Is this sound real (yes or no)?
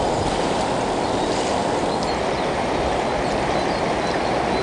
yes